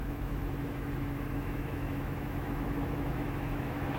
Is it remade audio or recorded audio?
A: remade